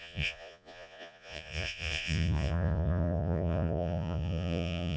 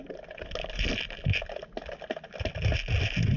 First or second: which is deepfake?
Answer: first